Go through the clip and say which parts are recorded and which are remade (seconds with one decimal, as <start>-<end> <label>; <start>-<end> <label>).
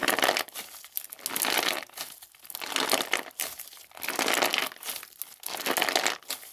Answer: 0.0-6.5 recorded